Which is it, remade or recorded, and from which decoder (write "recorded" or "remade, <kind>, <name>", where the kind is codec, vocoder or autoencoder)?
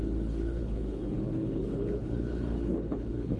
remade, codec, HILCodec